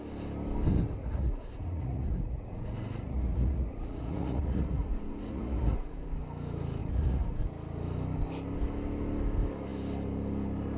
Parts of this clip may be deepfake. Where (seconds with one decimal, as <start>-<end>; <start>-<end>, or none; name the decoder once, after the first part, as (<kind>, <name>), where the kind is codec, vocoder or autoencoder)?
1.0-6.0 (vocoder, Vocos); 6.8-7.4